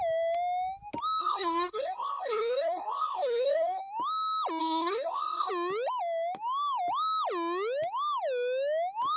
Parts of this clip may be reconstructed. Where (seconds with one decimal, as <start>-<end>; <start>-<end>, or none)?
1.2-3.8; 4.6-5.5